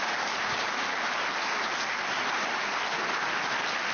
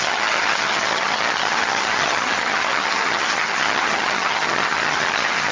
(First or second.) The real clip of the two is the first